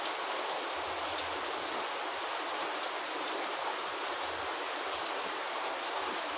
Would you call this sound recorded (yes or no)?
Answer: yes